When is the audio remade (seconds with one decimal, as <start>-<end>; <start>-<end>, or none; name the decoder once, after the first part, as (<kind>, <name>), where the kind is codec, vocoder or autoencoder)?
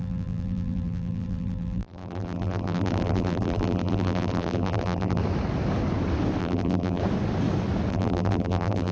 0.0-5.2 (vocoder, BigVGAN v2); 6.4-7.0; 7.9-8.9